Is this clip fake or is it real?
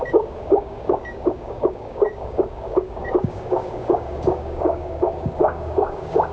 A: fake